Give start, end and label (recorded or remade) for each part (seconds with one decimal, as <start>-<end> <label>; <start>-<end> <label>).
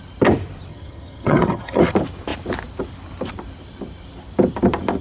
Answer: 0.0-0.7 recorded; 0.7-1.8 remade; 1.8-5.0 recorded